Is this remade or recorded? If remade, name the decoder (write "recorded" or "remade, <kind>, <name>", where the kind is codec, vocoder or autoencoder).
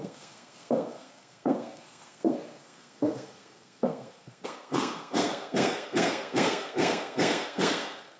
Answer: remade, codec, SNAC